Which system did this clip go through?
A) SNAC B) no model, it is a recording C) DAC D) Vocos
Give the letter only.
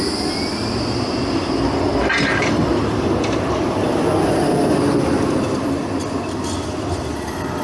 B